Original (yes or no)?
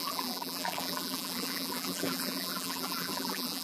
no